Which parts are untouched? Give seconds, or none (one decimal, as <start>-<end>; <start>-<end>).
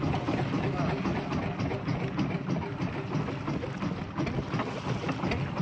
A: 0.0-5.6